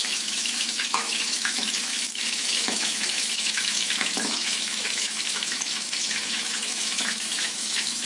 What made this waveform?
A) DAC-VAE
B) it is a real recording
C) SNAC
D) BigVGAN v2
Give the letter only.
A